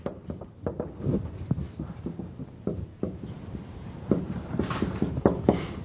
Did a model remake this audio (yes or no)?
yes